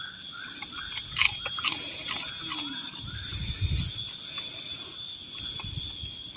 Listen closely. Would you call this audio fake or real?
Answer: real